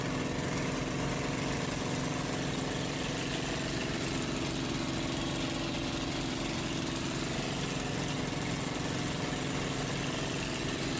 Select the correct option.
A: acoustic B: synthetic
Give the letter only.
A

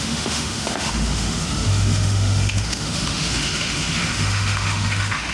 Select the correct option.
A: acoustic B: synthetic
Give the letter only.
B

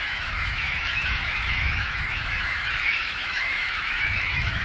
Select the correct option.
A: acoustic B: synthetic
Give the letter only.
B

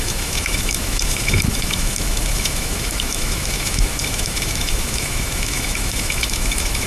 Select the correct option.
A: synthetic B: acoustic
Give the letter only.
A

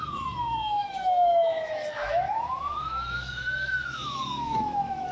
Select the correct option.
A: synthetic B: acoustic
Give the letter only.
A